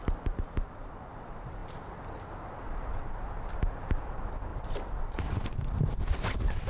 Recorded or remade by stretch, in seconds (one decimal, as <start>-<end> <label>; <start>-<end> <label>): 0.0-6.7 recorded